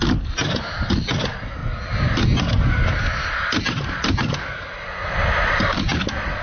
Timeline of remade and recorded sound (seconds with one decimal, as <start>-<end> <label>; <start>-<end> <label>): 0.0-6.4 recorded